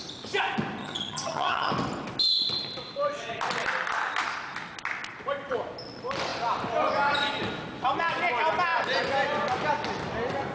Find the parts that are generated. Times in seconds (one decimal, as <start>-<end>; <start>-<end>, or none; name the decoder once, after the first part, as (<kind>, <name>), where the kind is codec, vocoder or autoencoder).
0.8-1.7 (vocoder, HiFi-GAN)